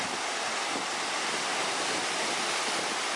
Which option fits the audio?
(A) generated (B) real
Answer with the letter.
B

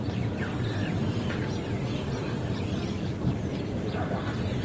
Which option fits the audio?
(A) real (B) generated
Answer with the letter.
A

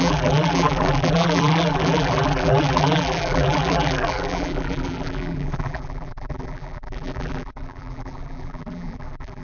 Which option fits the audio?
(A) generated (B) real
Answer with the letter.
A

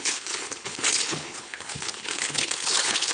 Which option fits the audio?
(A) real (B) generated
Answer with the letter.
B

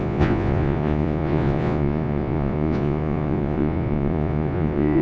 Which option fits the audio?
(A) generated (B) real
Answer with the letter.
A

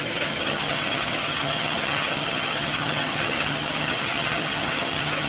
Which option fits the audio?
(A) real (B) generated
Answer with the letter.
B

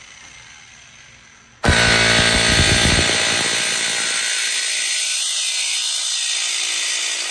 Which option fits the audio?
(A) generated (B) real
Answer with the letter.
B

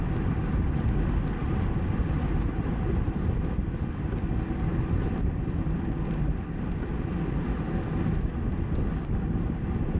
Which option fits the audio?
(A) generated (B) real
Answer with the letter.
B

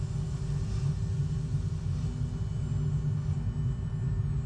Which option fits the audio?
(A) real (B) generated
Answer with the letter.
A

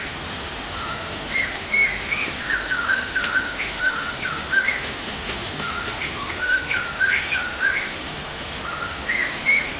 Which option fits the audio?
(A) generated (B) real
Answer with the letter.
A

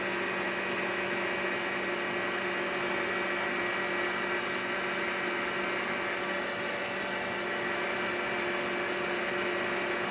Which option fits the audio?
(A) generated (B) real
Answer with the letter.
B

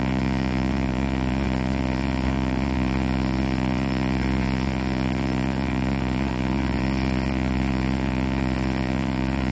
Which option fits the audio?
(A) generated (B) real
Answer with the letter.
A